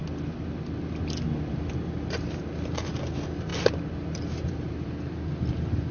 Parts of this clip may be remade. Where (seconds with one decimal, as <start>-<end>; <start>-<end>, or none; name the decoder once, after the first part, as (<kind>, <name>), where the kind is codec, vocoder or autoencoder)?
none